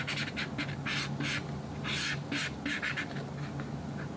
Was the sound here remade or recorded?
recorded